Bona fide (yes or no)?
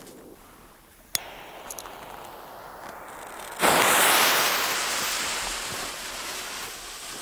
yes